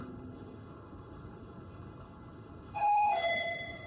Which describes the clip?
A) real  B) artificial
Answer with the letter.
B